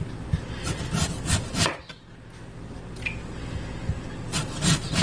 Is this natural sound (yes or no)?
yes